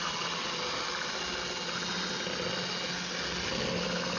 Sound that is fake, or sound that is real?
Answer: real